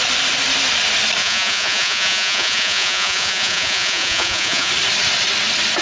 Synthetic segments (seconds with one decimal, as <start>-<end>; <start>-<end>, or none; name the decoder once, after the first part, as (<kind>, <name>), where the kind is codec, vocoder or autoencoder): 1.2-4.7 (vocoder, Vocos)

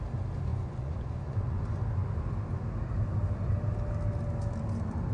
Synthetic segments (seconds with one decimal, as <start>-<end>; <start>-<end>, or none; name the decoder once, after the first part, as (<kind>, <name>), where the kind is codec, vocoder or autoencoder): 0.5-1.6 (vocoder, Vocos)

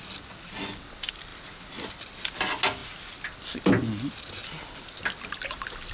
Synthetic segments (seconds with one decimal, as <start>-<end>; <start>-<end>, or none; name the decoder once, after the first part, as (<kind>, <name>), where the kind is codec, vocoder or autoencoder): none

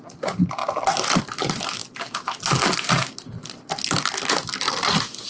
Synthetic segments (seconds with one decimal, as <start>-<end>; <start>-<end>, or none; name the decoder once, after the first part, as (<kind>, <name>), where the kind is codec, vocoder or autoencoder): none

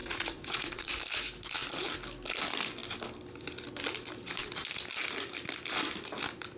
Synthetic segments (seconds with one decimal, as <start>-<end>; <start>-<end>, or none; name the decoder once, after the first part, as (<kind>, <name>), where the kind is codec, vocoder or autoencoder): 0.0-1.0 (vocoder, Vocos)

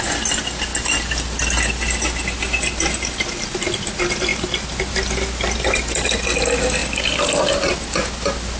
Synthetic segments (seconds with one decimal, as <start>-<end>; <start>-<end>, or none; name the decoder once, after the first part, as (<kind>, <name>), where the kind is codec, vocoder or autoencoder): none